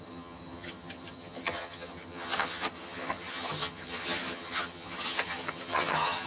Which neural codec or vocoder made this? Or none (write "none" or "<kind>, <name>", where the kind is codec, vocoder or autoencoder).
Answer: vocoder, HiFi-GAN